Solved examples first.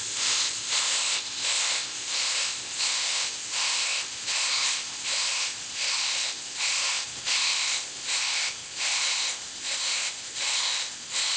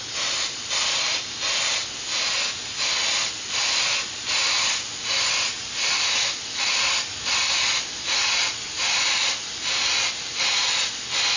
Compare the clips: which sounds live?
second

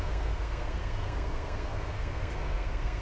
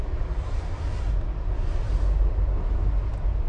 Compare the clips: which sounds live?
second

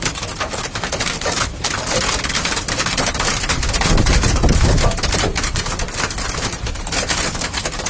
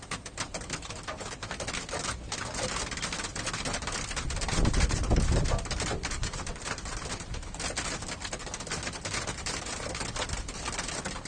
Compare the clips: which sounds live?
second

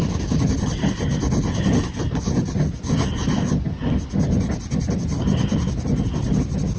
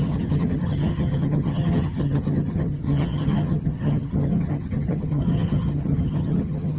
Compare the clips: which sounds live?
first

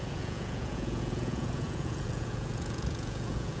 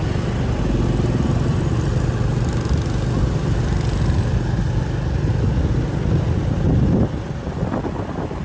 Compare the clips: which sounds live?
second